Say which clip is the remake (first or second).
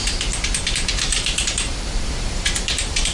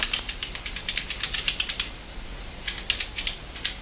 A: first